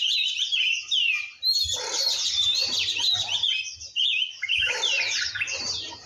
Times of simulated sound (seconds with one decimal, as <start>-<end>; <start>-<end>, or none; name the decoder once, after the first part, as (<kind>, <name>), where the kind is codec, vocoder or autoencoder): 4.1-4.8 (autoencoder, DAC-VAE)